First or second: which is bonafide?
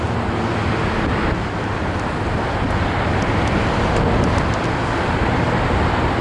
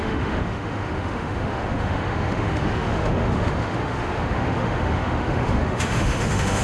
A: first